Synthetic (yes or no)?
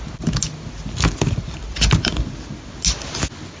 no